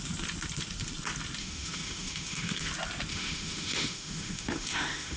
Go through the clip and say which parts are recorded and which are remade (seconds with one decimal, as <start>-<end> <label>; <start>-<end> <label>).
0.0-1.4 recorded; 1.4-2.7 remade; 2.7-3.1 recorded; 3.1-5.2 remade